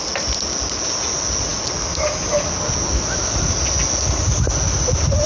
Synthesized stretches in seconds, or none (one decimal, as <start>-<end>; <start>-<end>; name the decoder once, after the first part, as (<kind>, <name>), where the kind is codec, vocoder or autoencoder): none